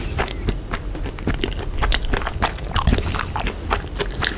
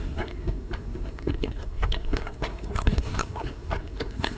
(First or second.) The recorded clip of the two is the first